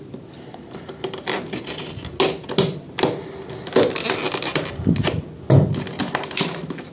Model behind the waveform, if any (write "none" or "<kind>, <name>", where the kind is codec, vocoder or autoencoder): none